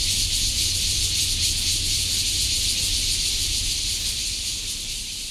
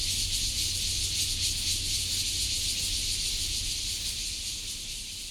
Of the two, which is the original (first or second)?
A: second